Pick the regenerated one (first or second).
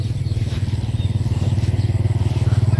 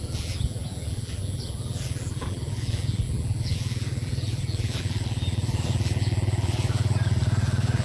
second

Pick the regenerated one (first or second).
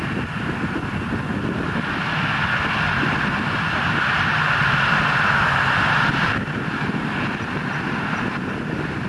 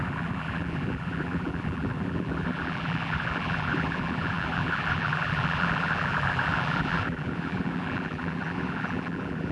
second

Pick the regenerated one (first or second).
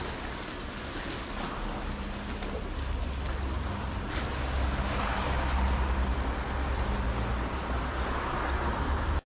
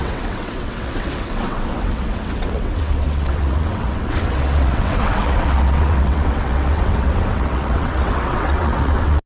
second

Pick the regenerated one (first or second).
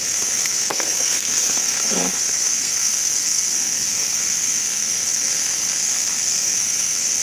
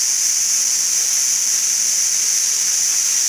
first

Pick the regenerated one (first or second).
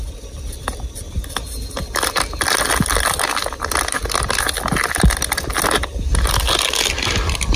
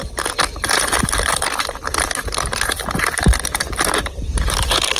second